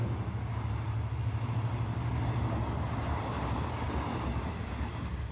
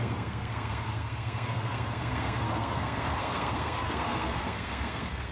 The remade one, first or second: second